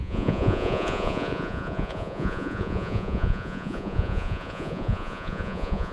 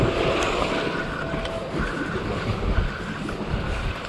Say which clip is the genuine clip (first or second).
second